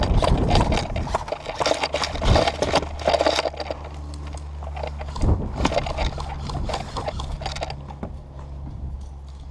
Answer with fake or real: real